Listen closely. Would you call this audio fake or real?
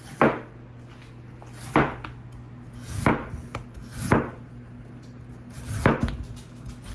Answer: real